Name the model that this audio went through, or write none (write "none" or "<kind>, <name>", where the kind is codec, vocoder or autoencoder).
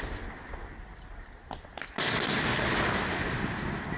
none